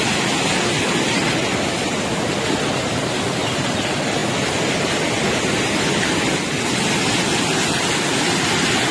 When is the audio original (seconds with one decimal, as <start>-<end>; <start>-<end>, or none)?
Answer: 0.0-8.9